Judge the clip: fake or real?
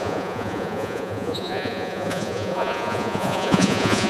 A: fake